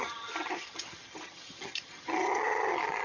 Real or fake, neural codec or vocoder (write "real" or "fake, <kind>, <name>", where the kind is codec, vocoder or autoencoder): fake, vocoder, HiFi-GAN